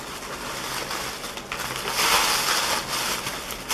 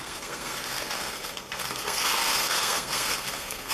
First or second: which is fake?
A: second